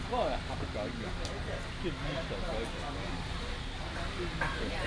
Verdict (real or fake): real